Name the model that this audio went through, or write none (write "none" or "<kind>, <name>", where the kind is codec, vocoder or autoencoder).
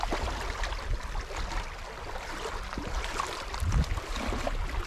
none